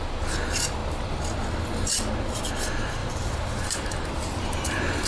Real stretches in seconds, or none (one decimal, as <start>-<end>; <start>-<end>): 0.0-3.0